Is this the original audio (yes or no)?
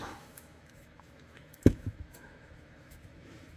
no